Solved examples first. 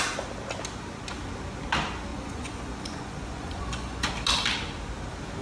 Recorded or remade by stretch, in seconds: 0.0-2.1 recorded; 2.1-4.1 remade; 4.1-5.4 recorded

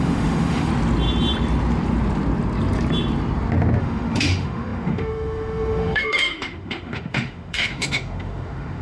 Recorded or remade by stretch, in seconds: 0.0-0.7 remade; 0.7-3.8 recorded; 3.8-8.8 remade

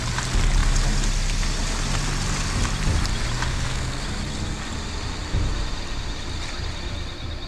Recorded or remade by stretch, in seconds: 0.0-3.5 recorded; 3.5-4.0 remade; 4.0-7.5 recorded

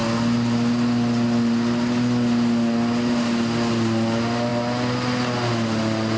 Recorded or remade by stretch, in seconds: 0.0-6.2 recorded

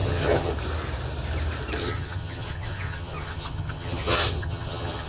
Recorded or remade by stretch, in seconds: 0.0-0.5 remade; 0.5-1.8 recorded; 1.8-5.1 remade

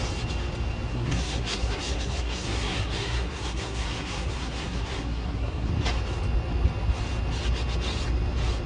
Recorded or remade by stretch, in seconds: 0.0-0.9 recorded; 0.9-5.7 remade; 5.7-8.7 recorded

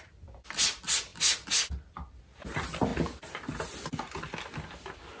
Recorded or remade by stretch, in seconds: 0.0-5.2 recorded

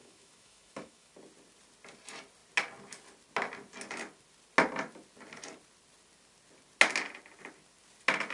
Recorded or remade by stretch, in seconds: 0.0-1.1 remade; 1.1-8.3 recorded